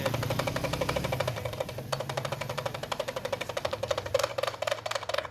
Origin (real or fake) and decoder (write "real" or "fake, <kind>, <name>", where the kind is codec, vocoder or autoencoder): real